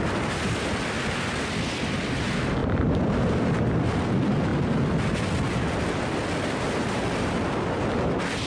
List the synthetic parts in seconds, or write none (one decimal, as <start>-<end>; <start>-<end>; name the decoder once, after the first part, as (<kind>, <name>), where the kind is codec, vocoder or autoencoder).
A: 2.6-3.1 (vocoder, BigVGAN v2)